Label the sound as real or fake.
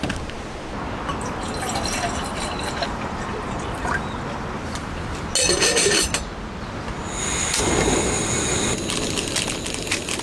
real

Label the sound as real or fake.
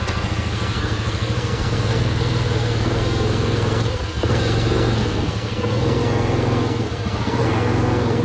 fake